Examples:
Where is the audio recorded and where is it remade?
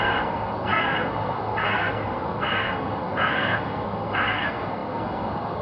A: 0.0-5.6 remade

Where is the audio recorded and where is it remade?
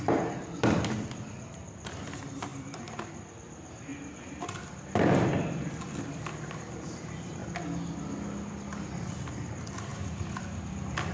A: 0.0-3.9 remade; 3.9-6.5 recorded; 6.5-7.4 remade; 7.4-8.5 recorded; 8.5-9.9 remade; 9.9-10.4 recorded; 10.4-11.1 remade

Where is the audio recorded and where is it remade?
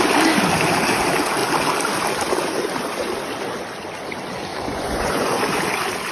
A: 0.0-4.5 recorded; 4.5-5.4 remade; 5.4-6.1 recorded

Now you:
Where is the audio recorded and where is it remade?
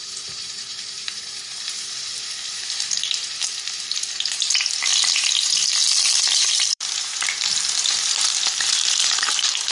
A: 0.0-4.9 remade; 4.9-5.9 recorded; 5.9-9.7 remade